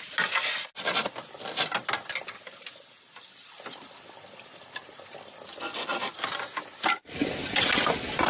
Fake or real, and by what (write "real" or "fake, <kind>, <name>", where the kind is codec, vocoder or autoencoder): real